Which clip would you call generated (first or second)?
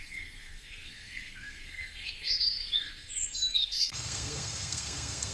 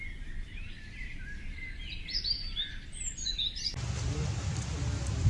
first